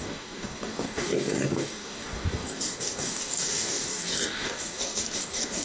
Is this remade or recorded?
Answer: remade